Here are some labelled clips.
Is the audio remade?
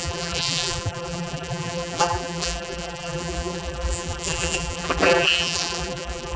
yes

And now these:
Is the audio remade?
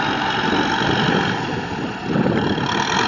no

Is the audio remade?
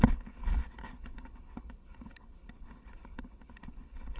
yes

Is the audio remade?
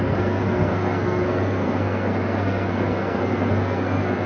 yes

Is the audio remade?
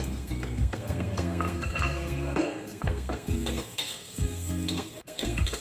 yes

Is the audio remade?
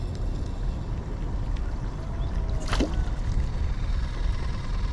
no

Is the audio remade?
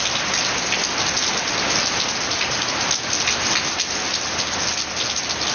no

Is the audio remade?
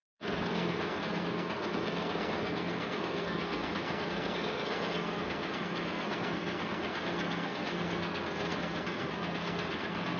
yes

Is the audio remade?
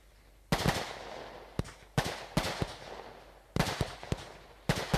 no